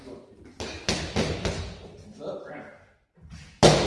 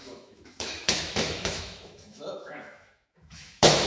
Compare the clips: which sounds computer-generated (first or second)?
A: second